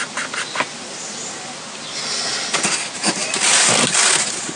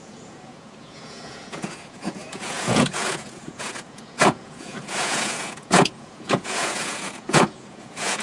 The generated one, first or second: second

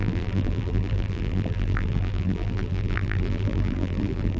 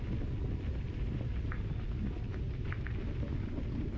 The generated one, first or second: first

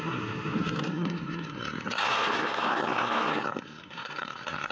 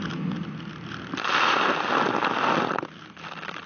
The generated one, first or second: first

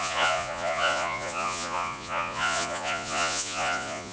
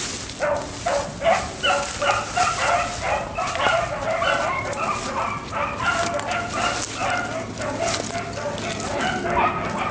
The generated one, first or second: first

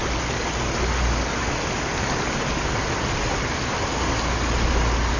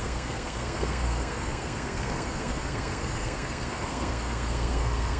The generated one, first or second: second